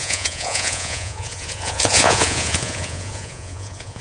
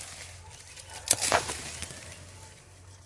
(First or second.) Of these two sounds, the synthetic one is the first